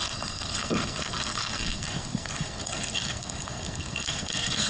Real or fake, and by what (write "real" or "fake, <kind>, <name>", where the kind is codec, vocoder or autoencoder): fake, codec, SNAC